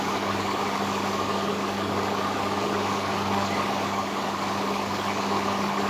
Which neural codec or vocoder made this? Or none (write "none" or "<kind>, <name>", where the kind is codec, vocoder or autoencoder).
codec, DAC